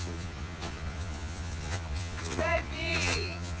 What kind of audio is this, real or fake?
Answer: fake